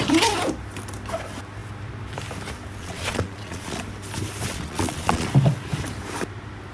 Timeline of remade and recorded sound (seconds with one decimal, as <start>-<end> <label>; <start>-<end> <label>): 0.0-2.8 recorded; 2.8-3.8 remade; 3.8-4.5 recorded; 4.5-5.3 remade; 5.3-6.7 recorded